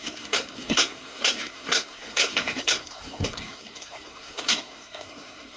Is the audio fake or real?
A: fake